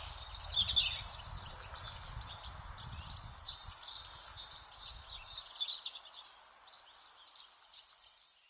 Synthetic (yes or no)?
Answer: no